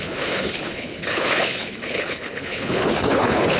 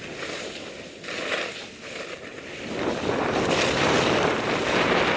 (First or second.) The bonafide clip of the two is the second